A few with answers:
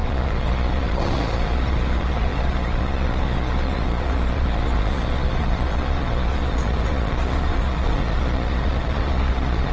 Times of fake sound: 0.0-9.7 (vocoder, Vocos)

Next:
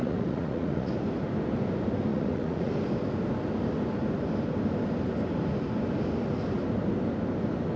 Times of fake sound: 0.0-0.9 (vocoder, Vocos); 2.1-2.7

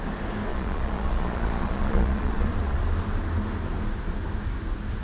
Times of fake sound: 0.5-2.8 (vocoder, Vocos)

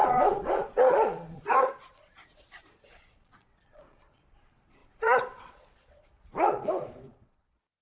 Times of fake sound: 0.0-7.8 (vocoder, Vocos)